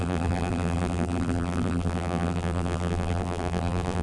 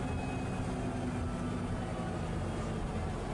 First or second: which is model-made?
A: first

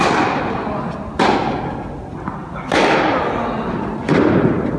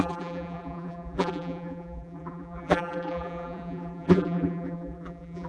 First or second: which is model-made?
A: second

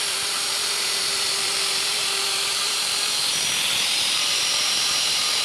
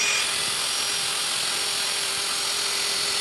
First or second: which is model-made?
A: first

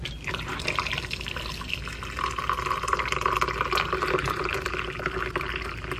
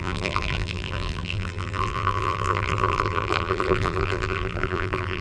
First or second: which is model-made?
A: second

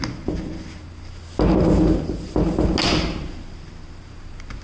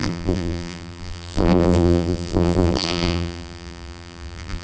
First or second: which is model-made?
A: second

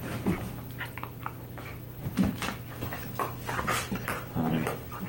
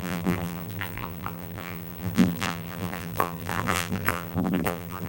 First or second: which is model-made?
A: second